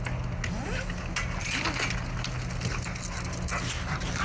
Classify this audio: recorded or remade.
recorded